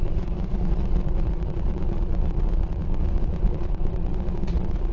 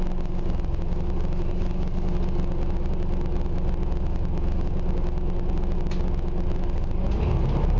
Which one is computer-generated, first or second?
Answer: first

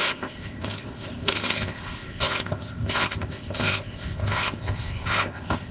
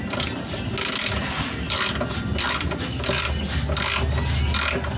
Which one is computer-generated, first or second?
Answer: first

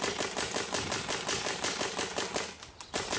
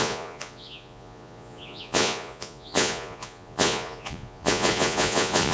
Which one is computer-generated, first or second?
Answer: second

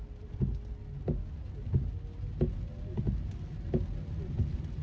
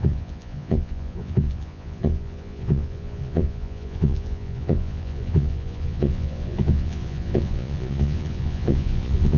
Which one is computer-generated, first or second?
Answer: second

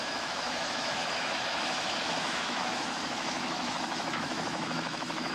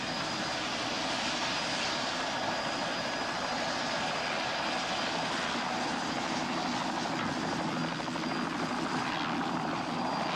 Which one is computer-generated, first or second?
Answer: first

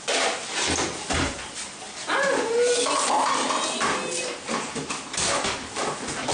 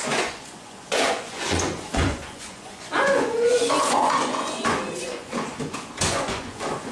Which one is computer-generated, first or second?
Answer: second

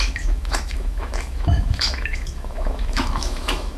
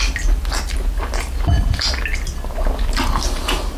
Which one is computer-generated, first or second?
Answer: first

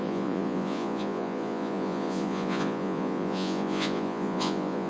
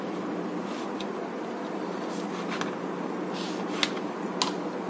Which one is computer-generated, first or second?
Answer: first